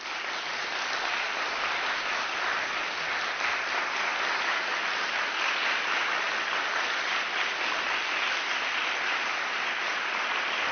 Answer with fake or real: real